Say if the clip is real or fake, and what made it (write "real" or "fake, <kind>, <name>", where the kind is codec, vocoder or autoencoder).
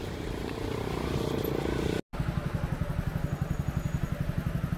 real